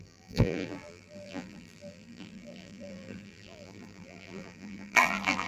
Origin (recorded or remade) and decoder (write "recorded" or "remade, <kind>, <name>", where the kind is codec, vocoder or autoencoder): remade, vocoder, BigVGAN v2